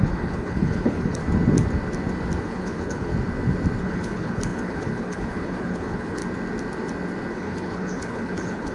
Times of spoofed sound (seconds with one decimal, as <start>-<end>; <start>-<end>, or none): 0.0-1.2; 2.4-3.1; 3.8-6.2; 7.3-8.7